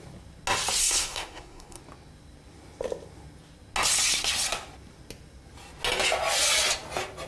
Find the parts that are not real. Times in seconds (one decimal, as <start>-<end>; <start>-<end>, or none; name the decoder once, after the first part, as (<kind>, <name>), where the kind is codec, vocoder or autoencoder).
0.8-1.8 (codec, SNAC)